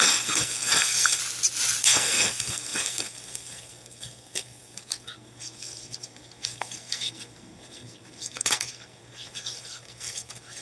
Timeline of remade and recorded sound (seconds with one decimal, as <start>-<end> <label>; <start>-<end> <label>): 0.0-1.2 remade; 1.2-1.8 recorded; 1.8-10.6 remade

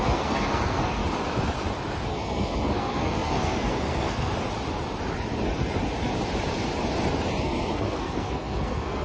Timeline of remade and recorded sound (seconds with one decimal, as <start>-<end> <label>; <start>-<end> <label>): 0.0-1.0 remade; 1.0-2.1 recorded; 2.1-4.3 remade; 4.3-7.4 recorded; 7.4-9.0 remade

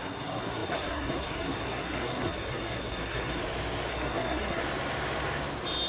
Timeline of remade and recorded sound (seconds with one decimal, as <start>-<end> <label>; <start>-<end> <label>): 0.0-3.4 remade; 3.4-3.9 recorded; 3.9-4.6 remade; 4.6-5.9 recorded

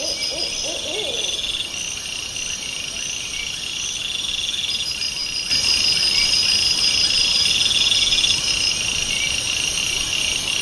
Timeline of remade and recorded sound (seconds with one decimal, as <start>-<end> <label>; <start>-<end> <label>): 0.0-10.6 recorded

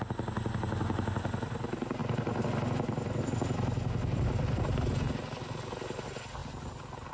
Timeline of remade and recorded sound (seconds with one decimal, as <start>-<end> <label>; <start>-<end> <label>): 0.0-7.1 recorded